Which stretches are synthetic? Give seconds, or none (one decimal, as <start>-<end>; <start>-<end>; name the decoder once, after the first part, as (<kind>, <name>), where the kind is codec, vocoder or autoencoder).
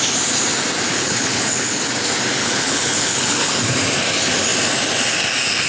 0.9-1.8 (codec, HILCodec); 2.4-3.5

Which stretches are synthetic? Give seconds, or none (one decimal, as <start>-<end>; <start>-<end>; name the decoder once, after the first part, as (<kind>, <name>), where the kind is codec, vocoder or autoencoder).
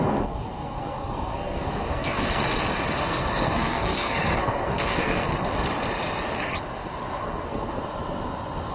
0.0-2.4 (codec, SNAC); 3.0-5.3; 7.2-7.8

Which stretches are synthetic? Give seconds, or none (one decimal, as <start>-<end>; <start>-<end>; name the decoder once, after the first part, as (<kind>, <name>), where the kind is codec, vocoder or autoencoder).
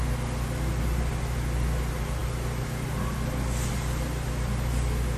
none